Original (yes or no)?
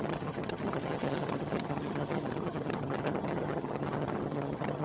no